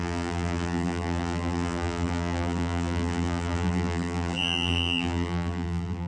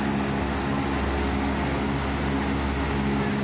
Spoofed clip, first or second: first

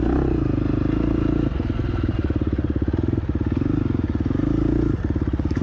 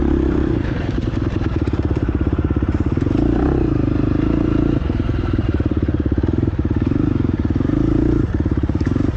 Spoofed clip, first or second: second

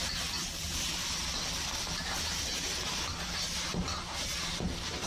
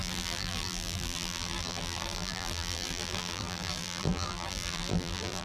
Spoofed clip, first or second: second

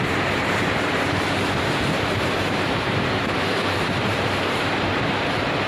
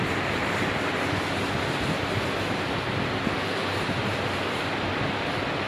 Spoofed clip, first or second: first